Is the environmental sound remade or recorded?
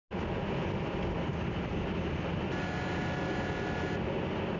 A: recorded